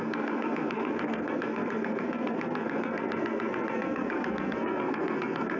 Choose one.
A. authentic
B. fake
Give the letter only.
B